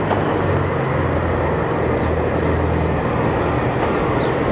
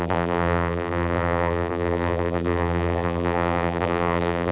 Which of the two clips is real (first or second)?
first